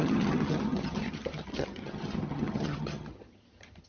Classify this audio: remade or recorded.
remade